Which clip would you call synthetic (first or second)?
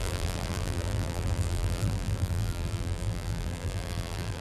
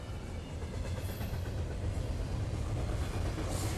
first